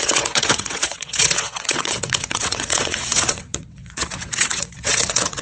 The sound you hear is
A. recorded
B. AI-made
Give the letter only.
B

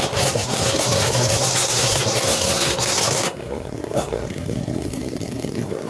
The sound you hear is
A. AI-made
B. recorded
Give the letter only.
A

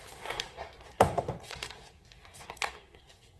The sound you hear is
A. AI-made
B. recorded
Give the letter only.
A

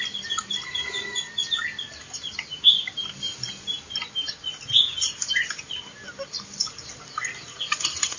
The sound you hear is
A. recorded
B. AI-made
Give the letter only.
A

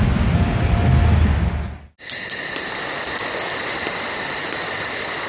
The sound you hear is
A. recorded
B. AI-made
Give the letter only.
A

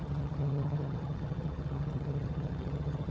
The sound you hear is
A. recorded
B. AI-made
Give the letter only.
B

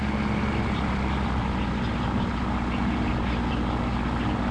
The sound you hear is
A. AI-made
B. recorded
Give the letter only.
B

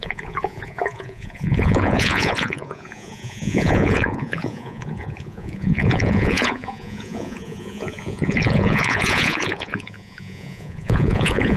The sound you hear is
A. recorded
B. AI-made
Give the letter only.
B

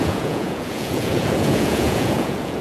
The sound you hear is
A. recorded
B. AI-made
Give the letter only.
B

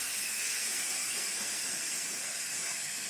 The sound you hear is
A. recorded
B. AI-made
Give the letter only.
B